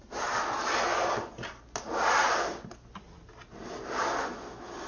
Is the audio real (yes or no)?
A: yes